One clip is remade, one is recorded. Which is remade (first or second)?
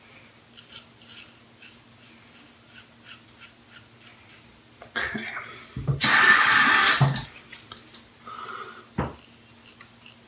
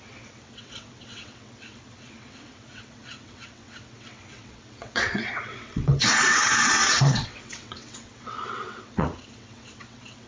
second